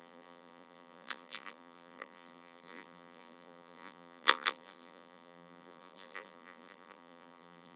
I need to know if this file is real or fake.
fake